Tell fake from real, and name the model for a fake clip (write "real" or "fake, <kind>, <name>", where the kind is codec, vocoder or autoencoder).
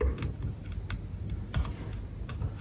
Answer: real